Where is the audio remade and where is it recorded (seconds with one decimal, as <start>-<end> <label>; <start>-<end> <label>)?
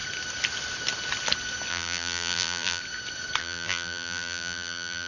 0.0-1.7 recorded; 1.7-2.8 remade; 2.8-3.4 recorded; 3.4-5.1 remade